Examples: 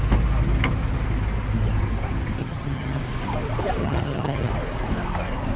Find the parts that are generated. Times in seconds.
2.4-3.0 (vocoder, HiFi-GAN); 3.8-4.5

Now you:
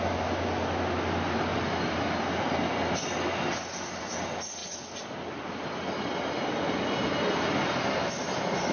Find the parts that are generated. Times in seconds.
none

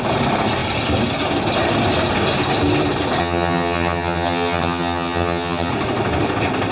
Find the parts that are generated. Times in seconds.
3.2-5.7 (vocoder, HiFi-GAN)

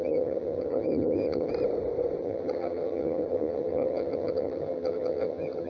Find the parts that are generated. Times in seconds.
0.0-1.5 (vocoder, HiFi-GAN); 2.2-5.7

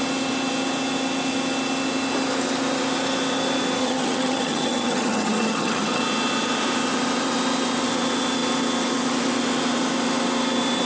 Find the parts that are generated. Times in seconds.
3.8-6.0 (vocoder, HiFi-GAN)

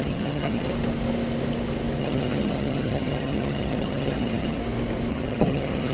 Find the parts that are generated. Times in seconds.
0.0-0.7 (vocoder, HiFi-GAN); 2.0-4.6; 5.1-5.9